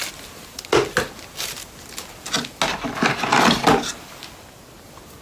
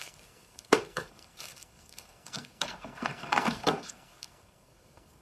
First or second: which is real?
first